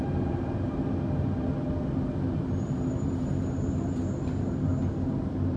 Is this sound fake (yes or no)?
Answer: no